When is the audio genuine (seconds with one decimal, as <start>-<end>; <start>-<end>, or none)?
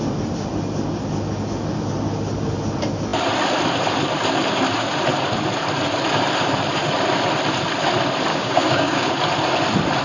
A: 0.0-8.3; 9.1-10.0